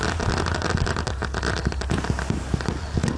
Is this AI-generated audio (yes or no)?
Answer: no